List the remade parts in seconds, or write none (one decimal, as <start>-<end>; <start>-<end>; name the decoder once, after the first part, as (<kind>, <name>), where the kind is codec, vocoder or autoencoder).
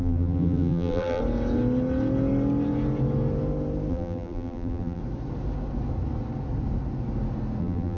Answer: 0.0-1.2 (vocoder, BigVGAN v2); 3.9-5.0; 7.6-8.0